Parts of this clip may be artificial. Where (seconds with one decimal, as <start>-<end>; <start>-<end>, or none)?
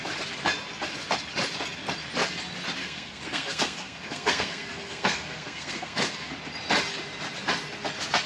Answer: 2.8-6.3